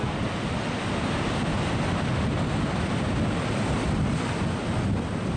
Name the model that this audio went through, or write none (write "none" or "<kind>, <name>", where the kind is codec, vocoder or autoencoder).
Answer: none